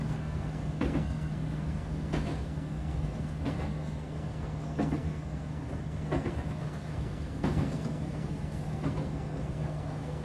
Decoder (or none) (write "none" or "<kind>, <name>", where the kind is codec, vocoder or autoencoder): codec, SNAC